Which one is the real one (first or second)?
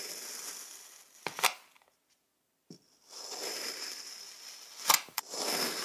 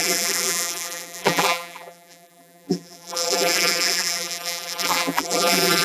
first